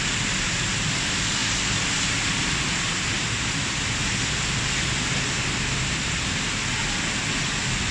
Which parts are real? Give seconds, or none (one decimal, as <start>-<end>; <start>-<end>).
0.0-7.9